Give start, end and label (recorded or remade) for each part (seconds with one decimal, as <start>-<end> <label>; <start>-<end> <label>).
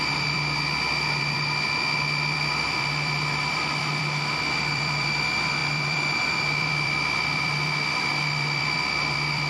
0.0-9.5 remade